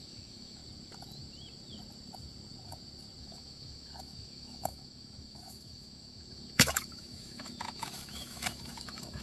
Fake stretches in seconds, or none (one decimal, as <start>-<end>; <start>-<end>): 0.0-0.6; 3.2-9.2